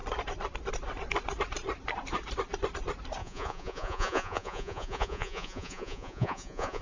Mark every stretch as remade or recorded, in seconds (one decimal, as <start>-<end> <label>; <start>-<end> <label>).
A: 0.0-3.2 recorded; 3.2-6.8 remade